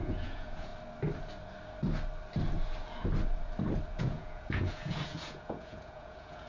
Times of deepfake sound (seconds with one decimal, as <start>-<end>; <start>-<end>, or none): 0.0-0.7; 4.0-6.5